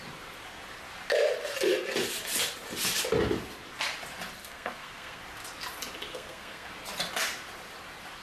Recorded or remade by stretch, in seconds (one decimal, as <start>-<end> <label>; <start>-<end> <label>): 0.0-4.4 recorded; 4.4-5.2 remade; 5.2-6.1 recorded; 6.1-6.7 remade; 6.7-8.2 recorded